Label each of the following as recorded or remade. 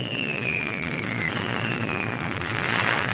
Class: remade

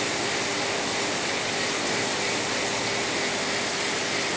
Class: recorded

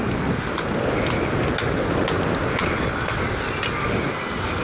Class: recorded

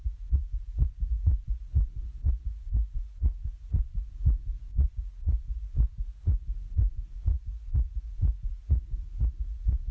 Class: remade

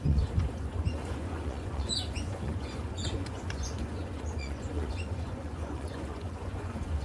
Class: remade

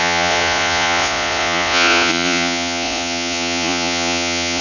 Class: remade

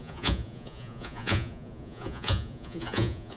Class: remade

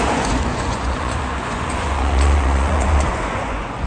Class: remade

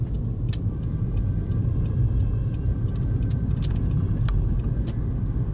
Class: recorded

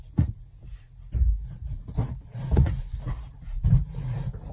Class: remade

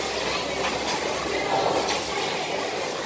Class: recorded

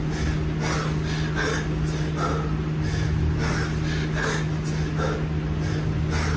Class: recorded